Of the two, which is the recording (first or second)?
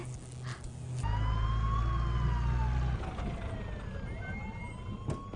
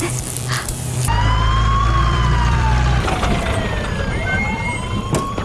first